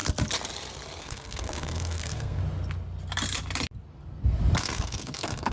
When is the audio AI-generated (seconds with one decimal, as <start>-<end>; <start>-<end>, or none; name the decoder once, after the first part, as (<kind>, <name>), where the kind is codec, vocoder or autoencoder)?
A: 1.0-2.4 (codec, SNAC); 4.6-5.5